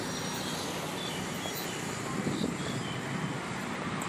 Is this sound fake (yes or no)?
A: no